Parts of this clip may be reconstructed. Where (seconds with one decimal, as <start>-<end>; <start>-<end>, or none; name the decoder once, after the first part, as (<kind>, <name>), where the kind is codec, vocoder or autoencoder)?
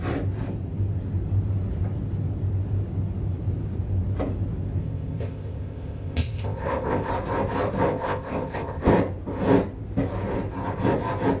4.8-7.1 (codec, ZipCodec); 7.9-8.9